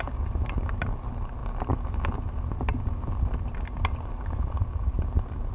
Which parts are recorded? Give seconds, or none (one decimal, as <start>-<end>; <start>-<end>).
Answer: 0.0-5.5